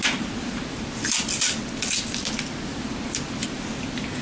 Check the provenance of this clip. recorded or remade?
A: recorded